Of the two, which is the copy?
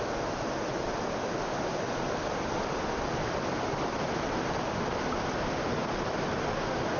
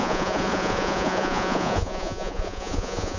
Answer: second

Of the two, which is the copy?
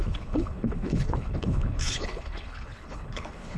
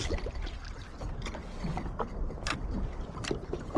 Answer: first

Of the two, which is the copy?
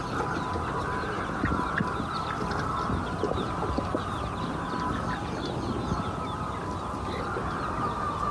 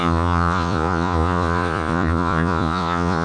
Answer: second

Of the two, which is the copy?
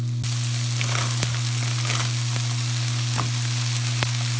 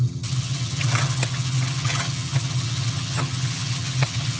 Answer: second